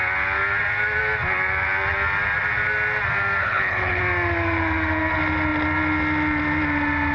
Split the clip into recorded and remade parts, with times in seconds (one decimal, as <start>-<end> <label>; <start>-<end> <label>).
0.0-3.4 recorded; 3.4-4.0 remade; 4.0-7.1 recorded